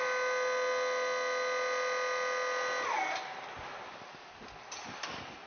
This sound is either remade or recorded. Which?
recorded